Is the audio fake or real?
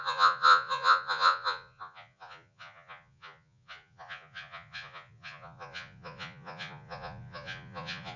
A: fake